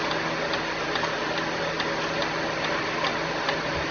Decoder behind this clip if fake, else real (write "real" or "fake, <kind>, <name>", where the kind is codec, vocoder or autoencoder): real